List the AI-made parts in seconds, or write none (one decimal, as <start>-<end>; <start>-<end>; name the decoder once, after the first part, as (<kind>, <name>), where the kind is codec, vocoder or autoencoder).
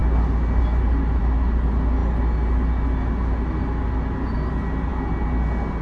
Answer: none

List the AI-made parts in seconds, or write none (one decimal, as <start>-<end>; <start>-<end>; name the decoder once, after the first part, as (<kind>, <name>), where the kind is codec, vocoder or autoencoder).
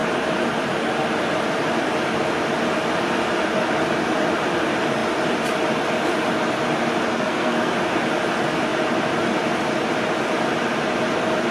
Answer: 7.1-7.7 (codec, SNAC)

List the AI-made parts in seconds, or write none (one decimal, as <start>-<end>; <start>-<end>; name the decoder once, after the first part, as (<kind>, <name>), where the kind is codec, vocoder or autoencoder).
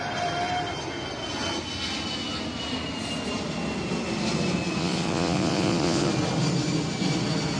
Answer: 4.8-6.1 (vocoder, Vocos)